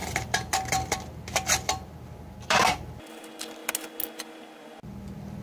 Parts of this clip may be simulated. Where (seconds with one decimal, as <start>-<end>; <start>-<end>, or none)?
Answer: 0.0-3.2